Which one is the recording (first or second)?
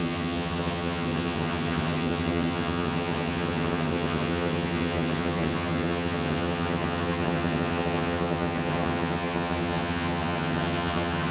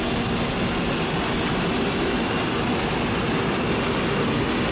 second